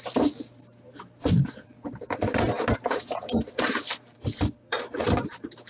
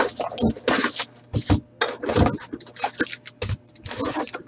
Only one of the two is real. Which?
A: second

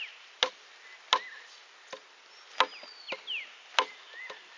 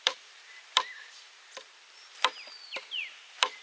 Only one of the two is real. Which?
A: first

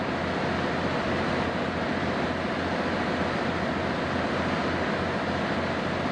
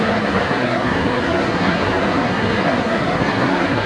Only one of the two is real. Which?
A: first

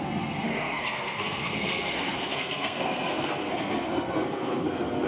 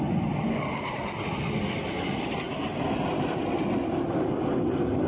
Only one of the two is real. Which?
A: second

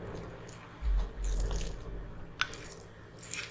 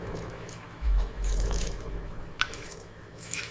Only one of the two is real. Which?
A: first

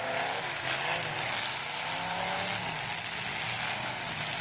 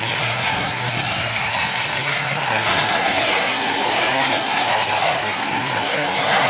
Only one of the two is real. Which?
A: first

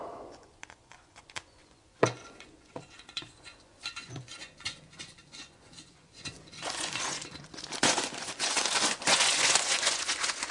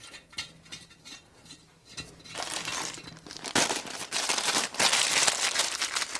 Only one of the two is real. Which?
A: second